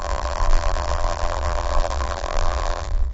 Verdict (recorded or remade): remade